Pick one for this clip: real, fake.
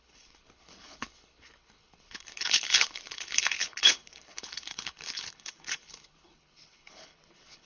fake